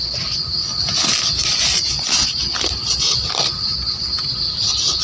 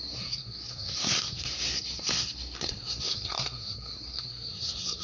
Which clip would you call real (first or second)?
first